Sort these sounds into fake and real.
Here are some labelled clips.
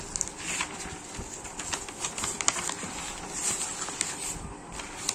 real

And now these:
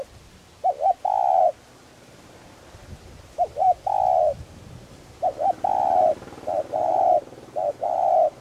fake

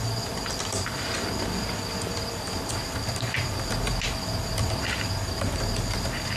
fake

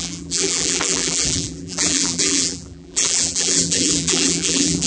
fake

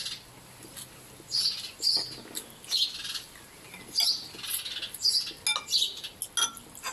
real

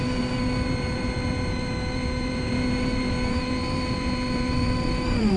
fake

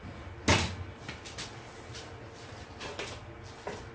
real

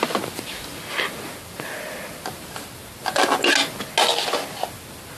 real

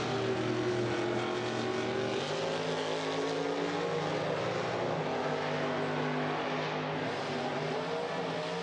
real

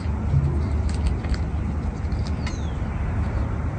real